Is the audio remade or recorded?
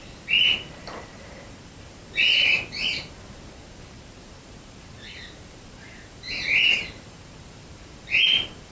remade